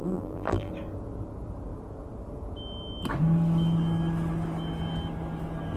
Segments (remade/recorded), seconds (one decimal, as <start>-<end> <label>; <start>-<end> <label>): 0.0-0.7 remade; 0.7-5.8 recorded